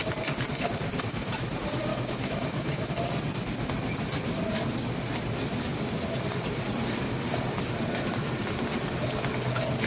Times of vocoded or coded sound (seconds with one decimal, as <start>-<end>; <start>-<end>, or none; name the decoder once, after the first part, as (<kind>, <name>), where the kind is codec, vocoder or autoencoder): 0.9-1.5 (autoencoder, DAC-VAE); 1.9-2.9